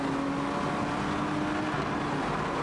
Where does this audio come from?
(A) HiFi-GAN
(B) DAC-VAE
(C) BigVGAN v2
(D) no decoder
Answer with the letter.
D